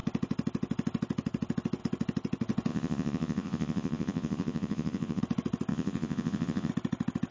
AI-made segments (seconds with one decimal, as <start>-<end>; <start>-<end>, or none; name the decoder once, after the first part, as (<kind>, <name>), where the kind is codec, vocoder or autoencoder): 2.7-5.2 (vocoder, Vocos); 5.7-6.7